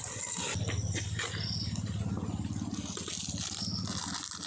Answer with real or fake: real